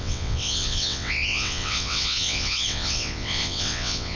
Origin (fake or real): fake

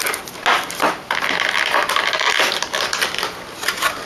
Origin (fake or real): real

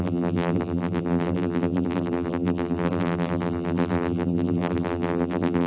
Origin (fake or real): fake